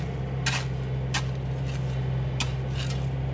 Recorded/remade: recorded